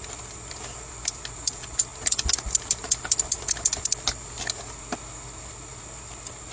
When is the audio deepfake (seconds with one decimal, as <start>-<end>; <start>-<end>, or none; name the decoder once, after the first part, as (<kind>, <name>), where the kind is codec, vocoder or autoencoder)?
none